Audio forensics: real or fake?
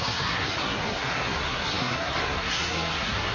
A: fake